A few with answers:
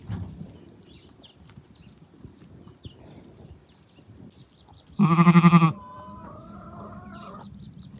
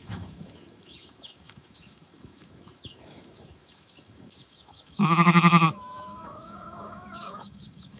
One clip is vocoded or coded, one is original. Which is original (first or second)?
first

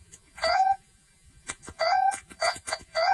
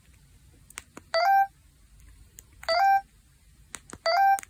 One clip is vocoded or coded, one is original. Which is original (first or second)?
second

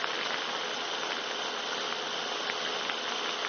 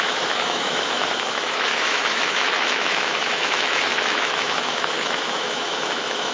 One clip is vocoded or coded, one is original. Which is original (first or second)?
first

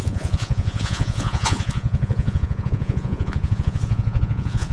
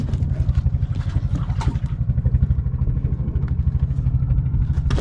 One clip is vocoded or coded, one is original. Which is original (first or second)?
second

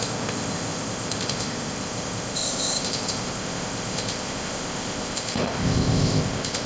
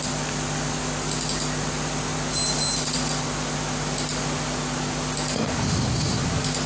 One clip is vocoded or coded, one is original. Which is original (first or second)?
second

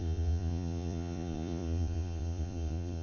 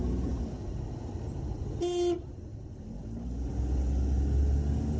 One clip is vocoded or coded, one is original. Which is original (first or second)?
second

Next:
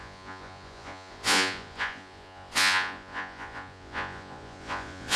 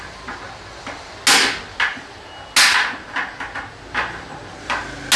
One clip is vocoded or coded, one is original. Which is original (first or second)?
second